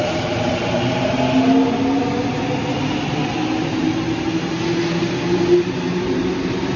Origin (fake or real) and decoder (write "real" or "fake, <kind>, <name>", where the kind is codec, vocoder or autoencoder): real